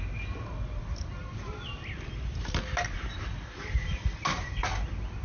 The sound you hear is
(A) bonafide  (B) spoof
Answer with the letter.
A